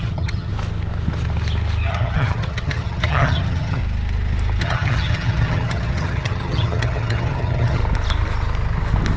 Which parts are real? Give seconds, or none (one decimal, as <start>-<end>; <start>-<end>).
0.5-1.9; 3.8-4.6; 7.8-9.2